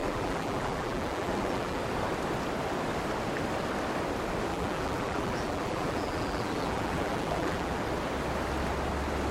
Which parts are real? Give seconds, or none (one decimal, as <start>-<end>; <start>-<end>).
1.8-4.5; 7.8-9.3